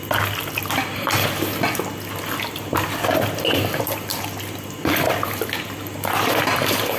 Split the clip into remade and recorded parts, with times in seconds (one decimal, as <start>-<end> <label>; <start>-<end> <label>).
0.0-7.0 recorded